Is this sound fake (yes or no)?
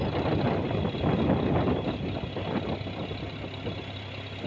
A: no